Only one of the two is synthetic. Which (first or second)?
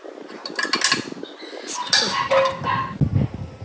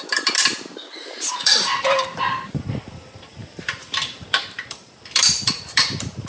second